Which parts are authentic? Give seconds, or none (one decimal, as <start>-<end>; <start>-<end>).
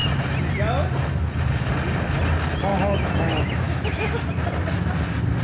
0.0-2.7; 4.1-5.4